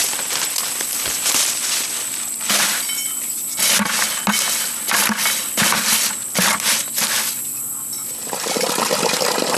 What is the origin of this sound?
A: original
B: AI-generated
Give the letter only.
A